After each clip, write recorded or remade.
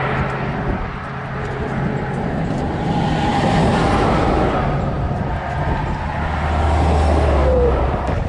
recorded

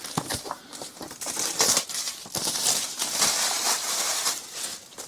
remade